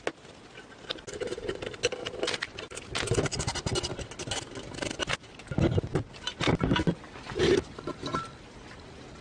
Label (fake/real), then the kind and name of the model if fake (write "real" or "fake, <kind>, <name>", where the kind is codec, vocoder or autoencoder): real